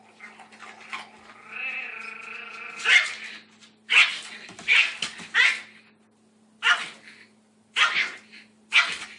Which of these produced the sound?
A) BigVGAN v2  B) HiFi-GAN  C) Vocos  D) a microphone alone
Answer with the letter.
D